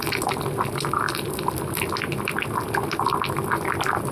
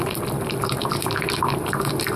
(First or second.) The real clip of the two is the first